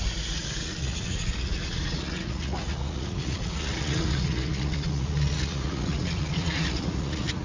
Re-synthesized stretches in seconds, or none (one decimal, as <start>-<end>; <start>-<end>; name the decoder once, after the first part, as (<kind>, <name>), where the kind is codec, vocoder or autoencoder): 0.0-7.4 (vocoder, Vocos)